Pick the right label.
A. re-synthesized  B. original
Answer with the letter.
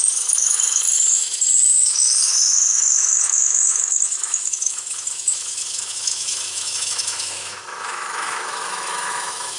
A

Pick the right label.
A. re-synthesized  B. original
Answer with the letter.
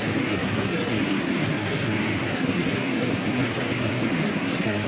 A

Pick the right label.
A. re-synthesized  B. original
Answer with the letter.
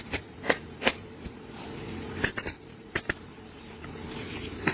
A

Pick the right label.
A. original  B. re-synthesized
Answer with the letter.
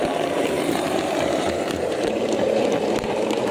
B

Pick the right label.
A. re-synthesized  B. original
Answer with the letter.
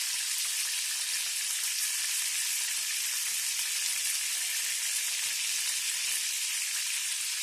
B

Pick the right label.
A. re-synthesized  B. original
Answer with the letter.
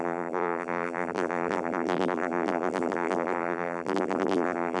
A